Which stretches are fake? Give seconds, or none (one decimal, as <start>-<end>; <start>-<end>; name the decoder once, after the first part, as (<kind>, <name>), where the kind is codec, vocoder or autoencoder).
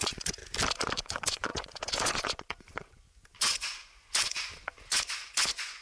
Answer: 0.0-0.4 (vocoder, Vocos); 1.0-5.8